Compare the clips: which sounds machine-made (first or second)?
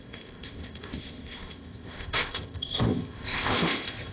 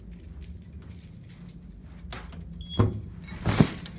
first